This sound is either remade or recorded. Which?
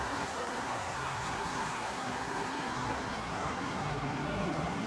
remade